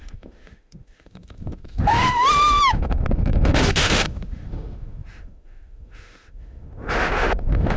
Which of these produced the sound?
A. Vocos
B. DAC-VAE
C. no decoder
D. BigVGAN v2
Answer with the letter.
B